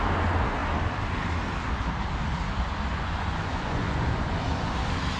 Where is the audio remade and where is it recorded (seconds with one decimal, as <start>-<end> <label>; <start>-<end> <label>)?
0.0-2.9 recorded; 2.9-4.7 remade; 4.7-5.2 recorded